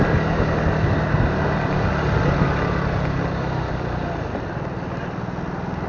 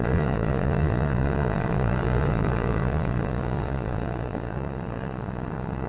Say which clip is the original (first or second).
first